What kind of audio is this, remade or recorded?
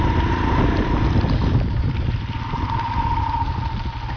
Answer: recorded